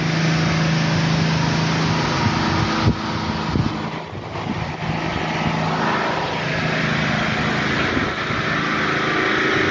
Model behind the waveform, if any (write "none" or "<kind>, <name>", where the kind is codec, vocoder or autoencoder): none